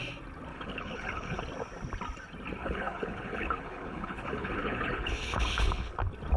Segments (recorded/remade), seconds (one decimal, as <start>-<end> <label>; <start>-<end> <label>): 0.0-0.5 recorded; 0.5-1.4 remade; 1.4-2.6 recorded; 2.6-6.0 remade; 6.0-6.4 recorded